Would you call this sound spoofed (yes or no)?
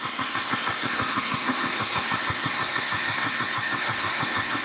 yes